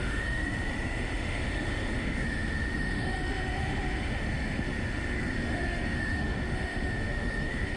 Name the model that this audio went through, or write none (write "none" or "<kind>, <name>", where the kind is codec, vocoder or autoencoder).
autoencoder, DAC-VAE